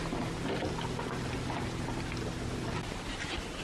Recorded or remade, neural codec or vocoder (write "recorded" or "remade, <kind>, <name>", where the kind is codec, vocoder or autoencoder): recorded